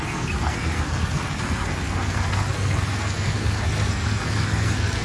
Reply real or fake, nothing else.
fake